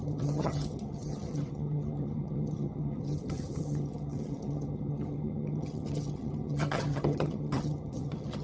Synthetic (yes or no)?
yes